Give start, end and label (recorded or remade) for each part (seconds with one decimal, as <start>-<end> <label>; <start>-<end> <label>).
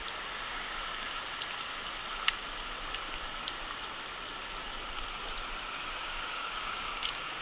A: 0.0-0.5 recorded; 0.5-1.2 remade; 1.2-6.0 recorded; 6.0-7.4 remade